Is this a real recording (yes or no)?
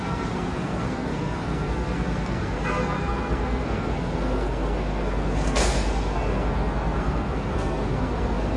no